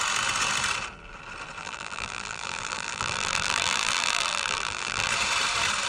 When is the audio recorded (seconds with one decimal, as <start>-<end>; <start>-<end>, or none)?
0.0-1.6; 5.1-5.9

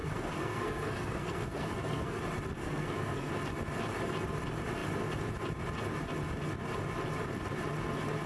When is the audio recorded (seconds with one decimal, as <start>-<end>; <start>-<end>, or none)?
2.2-2.6; 3.3-8.3

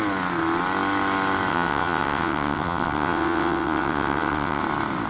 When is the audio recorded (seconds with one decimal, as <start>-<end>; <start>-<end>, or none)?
0.0-1.5; 4.6-5.1